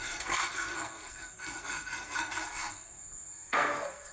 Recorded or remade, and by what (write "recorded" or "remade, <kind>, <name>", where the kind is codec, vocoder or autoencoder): remade, codec, SNAC